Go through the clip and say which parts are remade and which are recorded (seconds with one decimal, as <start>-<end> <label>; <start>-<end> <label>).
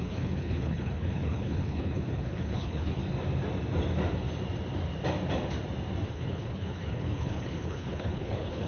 0.0-3.0 remade; 3.0-6.1 recorded; 6.1-8.7 remade